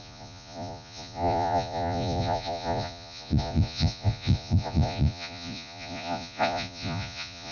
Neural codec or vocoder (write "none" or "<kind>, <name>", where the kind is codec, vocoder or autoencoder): vocoder, Vocos